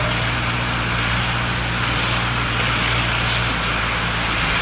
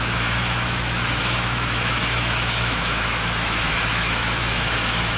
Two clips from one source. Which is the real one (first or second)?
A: first